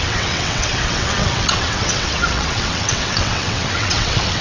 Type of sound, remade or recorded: remade